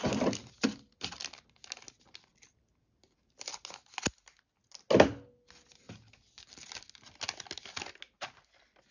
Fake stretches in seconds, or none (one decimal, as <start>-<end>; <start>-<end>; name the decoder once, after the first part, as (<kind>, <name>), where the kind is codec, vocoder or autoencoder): none